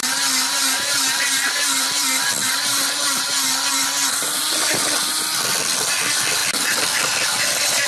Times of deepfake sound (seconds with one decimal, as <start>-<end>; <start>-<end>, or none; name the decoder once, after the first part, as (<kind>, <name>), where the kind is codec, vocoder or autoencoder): 0.0-6.4 (vocoder, BigVGAN v2); 7.4-7.9